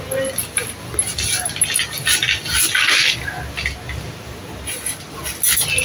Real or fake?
real